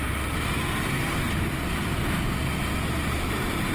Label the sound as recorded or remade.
recorded